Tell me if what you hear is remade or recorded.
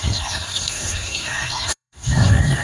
remade